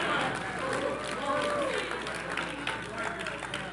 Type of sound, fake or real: real